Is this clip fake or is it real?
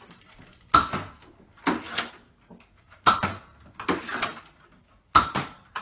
real